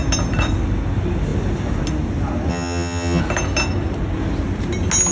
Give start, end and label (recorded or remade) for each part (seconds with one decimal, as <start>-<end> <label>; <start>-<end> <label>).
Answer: 0.0-2.5 recorded; 2.5-3.2 remade; 3.2-5.1 recorded